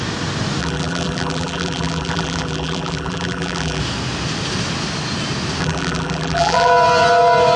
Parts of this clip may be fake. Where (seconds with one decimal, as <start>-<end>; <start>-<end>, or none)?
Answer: 0.6-3.8; 5.6-6.7